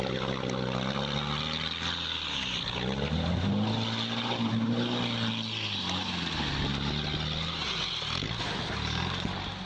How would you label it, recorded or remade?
recorded